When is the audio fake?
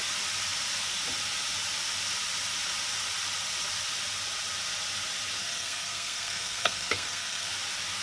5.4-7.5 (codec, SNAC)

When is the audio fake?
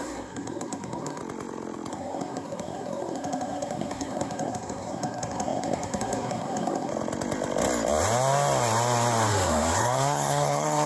0.0-1.2 (codec, SNAC); 1.9-6.9; 9.3-10.9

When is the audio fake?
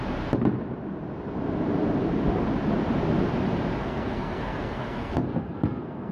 3.8-6.1 (codec, SNAC)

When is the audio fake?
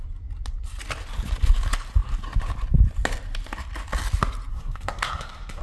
4.5-5.6 (codec, SNAC)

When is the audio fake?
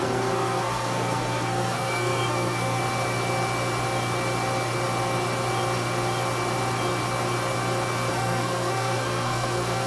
0.0-2.8 (codec, SNAC); 8.1-9.9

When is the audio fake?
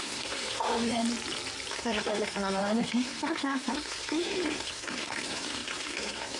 0.0-1.0 (codec, SNAC); 1.7-6.4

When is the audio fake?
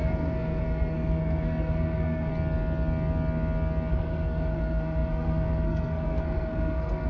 0.0-2.3 (codec, SNAC); 3.9-7.1